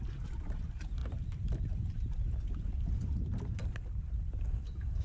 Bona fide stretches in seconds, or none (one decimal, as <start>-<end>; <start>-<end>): 0.0-5.0